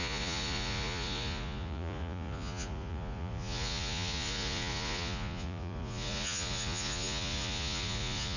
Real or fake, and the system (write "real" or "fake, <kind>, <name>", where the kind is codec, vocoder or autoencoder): fake, vocoder, Vocos